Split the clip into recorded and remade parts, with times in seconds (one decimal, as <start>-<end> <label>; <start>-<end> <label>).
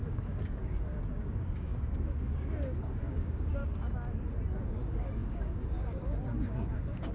0.0-3.6 remade; 3.6-4.6 recorded; 4.6-7.1 remade